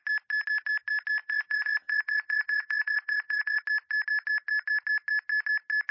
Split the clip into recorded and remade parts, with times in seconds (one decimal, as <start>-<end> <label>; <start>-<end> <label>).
0.0-1.2 recorded; 1.2-3.6 remade; 3.6-5.9 recorded